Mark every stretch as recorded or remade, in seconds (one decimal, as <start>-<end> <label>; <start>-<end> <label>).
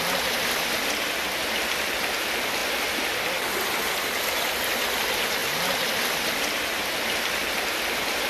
0.0-8.3 recorded